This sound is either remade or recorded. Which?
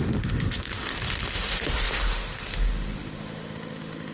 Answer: remade